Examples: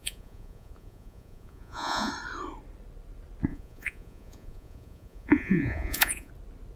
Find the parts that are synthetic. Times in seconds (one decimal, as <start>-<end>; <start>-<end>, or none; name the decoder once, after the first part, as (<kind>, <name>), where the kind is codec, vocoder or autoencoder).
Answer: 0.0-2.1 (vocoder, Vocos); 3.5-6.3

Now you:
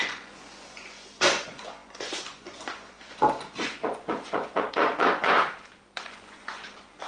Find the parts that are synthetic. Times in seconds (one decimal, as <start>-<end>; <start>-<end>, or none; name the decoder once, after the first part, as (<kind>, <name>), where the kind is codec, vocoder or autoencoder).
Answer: 0.0-5.4 (vocoder, Vocos); 6.0-7.1

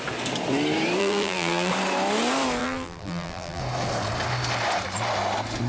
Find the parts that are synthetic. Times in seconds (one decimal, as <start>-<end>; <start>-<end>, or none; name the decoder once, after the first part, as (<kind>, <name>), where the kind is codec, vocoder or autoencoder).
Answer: 1.0-1.7 (vocoder, BigVGAN v2); 2.6-3.6